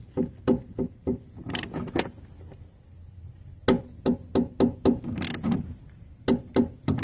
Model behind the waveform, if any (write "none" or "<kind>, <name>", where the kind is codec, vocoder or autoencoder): none